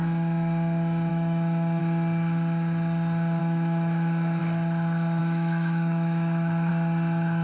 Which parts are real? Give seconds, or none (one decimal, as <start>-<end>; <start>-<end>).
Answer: 0.0-1.1; 1.8-3.4; 4.4-5.2; 6.7-7.4